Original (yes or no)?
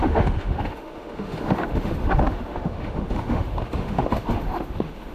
no